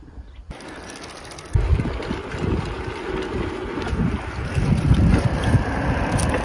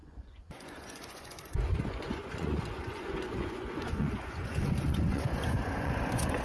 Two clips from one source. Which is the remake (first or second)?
second